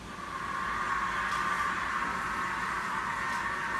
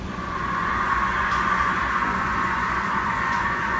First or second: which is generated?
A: second